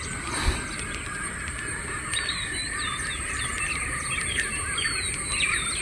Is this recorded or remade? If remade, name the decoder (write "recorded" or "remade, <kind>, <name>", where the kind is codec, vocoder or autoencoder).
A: recorded